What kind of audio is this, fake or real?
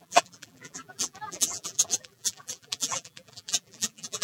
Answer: fake